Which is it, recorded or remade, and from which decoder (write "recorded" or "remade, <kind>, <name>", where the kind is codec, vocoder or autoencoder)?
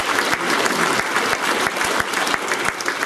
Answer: recorded